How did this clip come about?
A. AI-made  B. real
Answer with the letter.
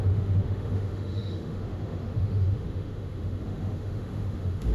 A